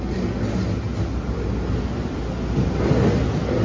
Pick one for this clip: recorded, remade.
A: recorded